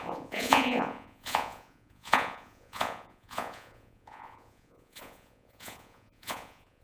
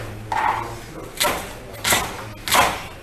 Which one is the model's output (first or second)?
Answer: first